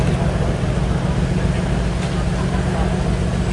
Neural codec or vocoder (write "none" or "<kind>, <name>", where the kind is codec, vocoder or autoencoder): none